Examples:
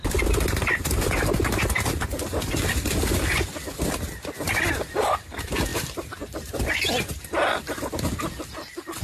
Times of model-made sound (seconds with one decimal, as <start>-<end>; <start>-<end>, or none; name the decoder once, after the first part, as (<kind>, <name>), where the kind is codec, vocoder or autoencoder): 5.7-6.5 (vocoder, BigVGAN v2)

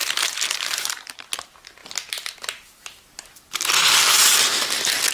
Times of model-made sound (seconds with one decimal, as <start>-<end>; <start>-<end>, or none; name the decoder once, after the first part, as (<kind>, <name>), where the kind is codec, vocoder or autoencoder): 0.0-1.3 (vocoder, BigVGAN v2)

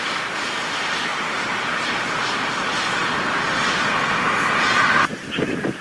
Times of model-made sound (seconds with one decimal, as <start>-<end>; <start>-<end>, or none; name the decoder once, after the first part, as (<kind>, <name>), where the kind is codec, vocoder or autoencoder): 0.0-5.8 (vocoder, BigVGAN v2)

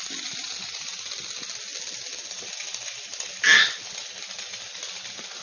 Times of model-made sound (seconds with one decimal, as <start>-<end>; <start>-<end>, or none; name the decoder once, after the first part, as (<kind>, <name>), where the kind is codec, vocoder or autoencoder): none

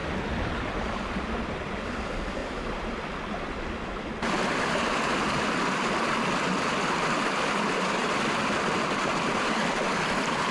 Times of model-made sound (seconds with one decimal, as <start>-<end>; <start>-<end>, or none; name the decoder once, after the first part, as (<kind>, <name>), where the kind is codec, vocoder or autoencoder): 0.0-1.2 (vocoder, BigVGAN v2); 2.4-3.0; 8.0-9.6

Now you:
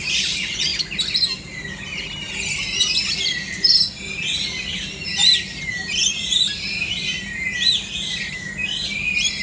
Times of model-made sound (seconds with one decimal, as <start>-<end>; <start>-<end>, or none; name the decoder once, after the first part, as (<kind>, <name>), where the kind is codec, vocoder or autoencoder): 0.0-0.7 (vocoder, BigVGAN v2); 5.1-9.4

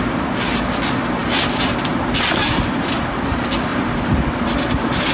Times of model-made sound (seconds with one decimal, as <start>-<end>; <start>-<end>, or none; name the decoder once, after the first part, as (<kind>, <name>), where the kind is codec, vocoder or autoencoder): 2.4-3.0 (vocoder, BigVGAN v2); 3.7-5.1

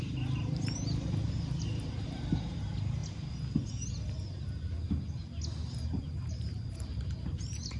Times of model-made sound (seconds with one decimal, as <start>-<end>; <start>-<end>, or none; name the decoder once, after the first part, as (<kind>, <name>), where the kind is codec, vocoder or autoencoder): 0.0-3.0 (vocoder, BigVGAN v2); 6.0-7.8